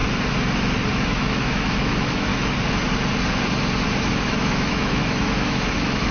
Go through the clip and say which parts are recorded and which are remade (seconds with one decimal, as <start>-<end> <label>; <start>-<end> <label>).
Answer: 0.0-0.9 recorded; 0.9-2.3 remade; 2.3-4.1 recorded; 4.1-6.1 remade

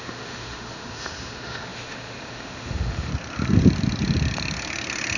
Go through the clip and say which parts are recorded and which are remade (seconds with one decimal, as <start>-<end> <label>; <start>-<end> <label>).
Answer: 0.0-3.1 remade; 3.1-5.2 recorded

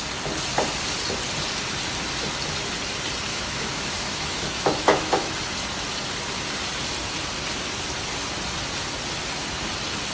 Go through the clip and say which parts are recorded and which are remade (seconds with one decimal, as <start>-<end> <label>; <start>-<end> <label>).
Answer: 0.0-3.3 recorded; 3.3-5.3 remade; 5.3-10.1 recorded